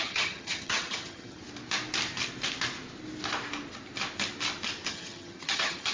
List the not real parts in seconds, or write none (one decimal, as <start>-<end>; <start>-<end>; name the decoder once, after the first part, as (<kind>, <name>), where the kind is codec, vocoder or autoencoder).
0.0-1.4 (vocoder, HiFi-GAN); 4.9-5.9